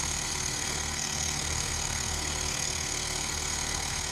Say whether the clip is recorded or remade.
remade